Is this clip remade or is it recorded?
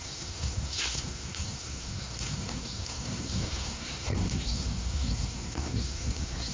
remade